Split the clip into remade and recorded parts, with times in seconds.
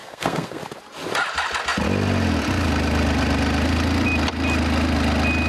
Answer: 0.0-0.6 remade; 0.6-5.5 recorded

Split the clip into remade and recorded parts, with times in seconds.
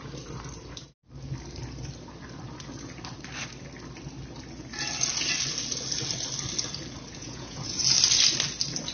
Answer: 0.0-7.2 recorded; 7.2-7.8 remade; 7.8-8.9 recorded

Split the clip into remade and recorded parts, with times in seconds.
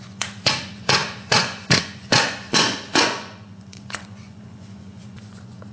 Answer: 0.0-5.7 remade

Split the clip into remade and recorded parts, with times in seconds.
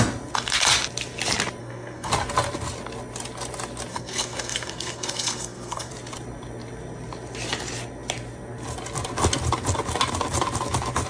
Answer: 0.0-1.6 recorded; 1.6-2.1 remade; 2.1-3.9 recorded; 3.9-5.9 remade; 5.9-11.1 recorded